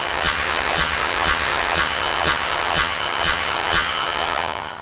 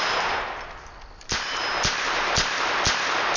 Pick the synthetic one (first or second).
first